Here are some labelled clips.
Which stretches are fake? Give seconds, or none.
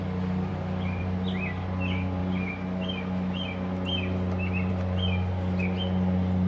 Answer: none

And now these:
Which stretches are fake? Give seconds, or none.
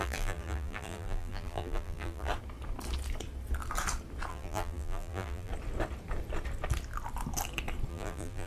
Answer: 0.0-2.3 (vocoder, BigVGAN v2); 4.3-5.5; 7.9-8.5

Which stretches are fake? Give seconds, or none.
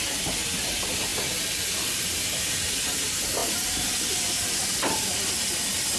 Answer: none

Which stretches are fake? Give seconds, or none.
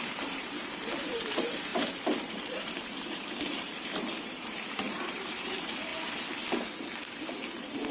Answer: 0.0-5.9 (vocoder, BigVGAN v2)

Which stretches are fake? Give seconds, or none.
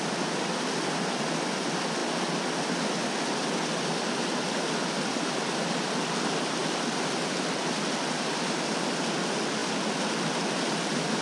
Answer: none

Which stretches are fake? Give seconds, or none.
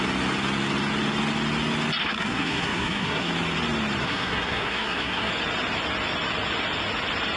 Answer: 2.0-3.3 (codec, SNAC); 4.0-5.3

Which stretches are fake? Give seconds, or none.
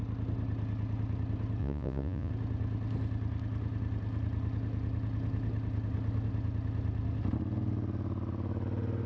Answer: 1.6-2.3 (vocoder, Vocos)